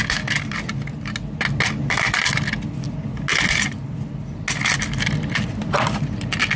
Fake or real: real